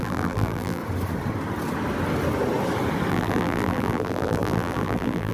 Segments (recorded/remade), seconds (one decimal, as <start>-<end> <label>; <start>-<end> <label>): 0.0-0.8 remade; 0.8-3.1 recorded; 3.1-5.3 remade